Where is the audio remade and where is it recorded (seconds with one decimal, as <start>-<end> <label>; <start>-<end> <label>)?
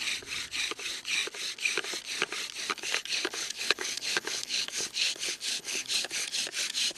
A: 0.0-2.7 recorded; 2.7-6.4 remade; 6.4-7.0 recorded